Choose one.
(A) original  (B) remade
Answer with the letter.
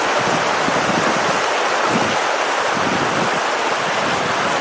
A